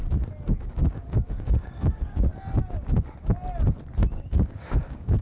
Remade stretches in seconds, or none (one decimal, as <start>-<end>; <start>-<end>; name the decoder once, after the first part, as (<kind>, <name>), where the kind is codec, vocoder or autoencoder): 0.6-2.3 (codec, DAC); 4.1-5.2